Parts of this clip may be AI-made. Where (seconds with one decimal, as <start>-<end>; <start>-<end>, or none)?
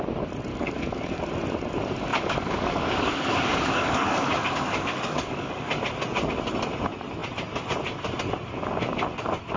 0.5-1.2; 2.1-5.7